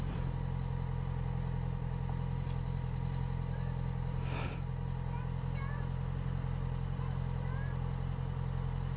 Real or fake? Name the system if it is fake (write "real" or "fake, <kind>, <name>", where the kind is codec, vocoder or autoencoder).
real